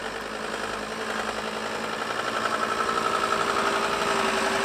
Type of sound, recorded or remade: recorded